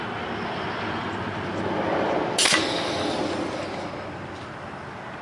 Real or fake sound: real